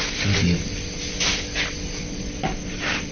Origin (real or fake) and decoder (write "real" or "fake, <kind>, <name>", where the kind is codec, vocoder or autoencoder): real